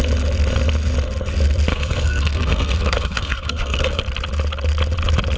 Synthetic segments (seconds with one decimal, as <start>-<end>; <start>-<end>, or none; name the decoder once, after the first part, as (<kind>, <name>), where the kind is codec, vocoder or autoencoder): 1.7-4.0 (codec, SNAC)

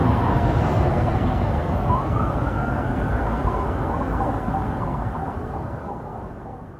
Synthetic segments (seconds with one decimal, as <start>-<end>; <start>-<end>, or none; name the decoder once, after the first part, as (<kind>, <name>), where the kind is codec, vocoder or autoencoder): 0.0-6.8 (codec, SNAC)

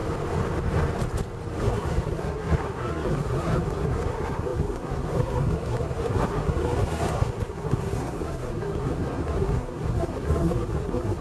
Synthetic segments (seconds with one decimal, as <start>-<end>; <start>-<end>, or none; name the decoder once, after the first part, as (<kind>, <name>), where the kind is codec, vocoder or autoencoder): 1.6-11.2 (codec, SNAC)

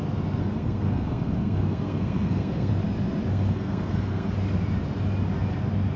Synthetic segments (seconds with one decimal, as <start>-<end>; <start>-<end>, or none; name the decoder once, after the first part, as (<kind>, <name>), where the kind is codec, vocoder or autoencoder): 0.4-2.7 (codec, SNAC); 3.3-4.3